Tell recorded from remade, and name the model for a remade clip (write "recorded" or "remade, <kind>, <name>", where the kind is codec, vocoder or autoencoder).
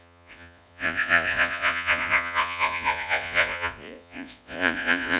remade, vocoder, Vocos